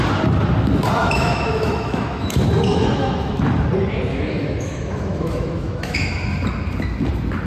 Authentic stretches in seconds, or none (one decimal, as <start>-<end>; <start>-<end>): 0.0-1.0; 3.4-4.1; 6.1-7.5

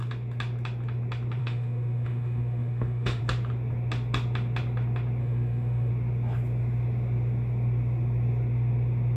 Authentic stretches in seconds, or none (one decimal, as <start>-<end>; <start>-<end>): 0.0-1.4; 3.2-5.2; 5.9-9.2

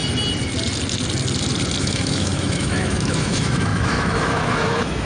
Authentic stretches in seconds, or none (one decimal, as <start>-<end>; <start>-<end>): 0.0-1.8

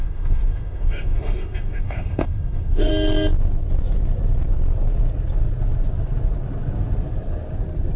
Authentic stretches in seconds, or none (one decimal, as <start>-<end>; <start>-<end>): 2.9-8.0

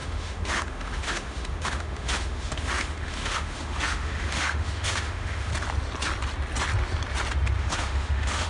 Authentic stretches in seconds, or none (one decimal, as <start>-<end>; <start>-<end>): 5.5-7.6

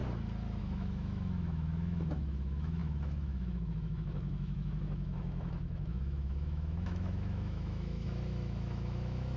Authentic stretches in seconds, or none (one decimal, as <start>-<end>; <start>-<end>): 0.0-0.6

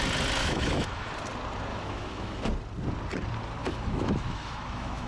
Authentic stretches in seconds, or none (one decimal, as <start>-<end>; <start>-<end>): 0.0-0.4; 1.1-1.7; 2.4-3.6